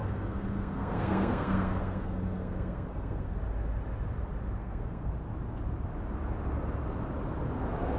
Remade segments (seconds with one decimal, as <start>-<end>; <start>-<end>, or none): 0.0-3.4; 4.6-5.1